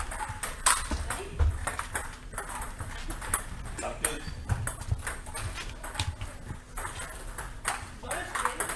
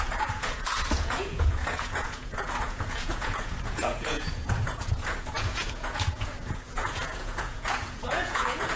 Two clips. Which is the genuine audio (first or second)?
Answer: first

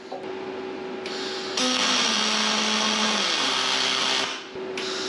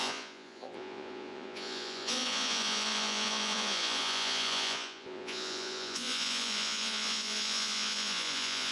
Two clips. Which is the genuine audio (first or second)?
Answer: first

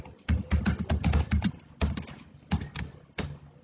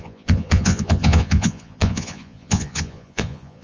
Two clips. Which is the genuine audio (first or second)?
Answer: first